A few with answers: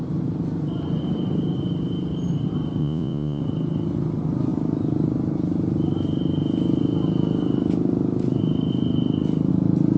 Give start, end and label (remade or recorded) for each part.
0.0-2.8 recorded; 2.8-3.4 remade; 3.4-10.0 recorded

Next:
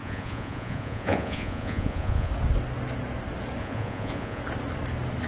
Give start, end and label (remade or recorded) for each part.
0.0-2.3 remade; 2.3-3.6 recorded; 3.6-4.4 remade; 4.4-5.3 recorded

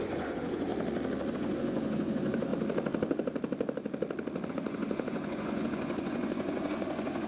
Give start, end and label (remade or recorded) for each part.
0.0-0.7 remade; 0.7-1.3 recorded; 1.3-2.5 remade; 2.5-4.5 recorded; 4.5-7.3 remade

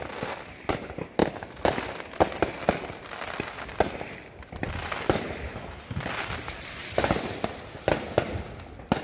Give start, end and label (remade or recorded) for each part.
0.0-9.0 recorded

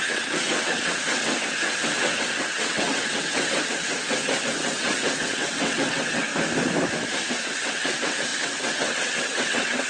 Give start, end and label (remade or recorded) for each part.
0.0-6.3 remade; 6.3-7.3 recorded; 7.3-9.9 remade

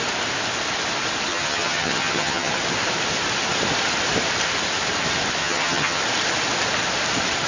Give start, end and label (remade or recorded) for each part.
0.0-1.3 recorded; 1.3-2.5 remade; 2.5-5.4 recorded; 5.4-6.0 remade; 6.0-7.5 recorded